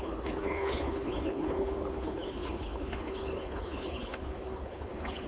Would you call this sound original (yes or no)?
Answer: no